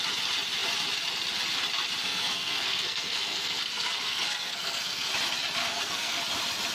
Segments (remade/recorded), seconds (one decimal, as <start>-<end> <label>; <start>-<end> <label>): 0.0-2.0 recorded; 2.0-5.1 remade; 5.1-5.6 recorded; 5.6-6.2 remade; 6.2-6.7 recorded